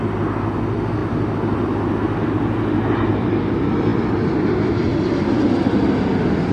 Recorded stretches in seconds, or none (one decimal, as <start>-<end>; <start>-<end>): 0.0-6.5